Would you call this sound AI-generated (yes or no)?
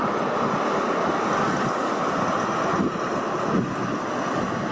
no